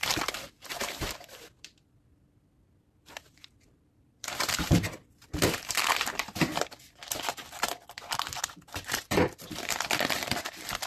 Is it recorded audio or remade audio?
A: remade